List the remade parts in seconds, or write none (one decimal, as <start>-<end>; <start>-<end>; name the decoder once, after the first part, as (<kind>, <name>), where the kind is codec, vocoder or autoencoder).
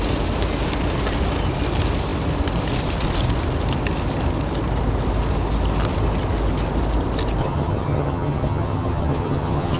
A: 7.4-9.8 (vocoder, HiFi-GAN)